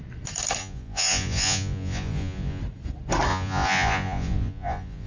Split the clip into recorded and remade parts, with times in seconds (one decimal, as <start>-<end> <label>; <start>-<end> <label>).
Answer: 0.0-0.6 recorded; 0.6-2.6 remade; 2.6-3.3 recorded; 3.3-5.1 remade